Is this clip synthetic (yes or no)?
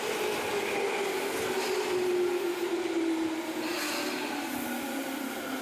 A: no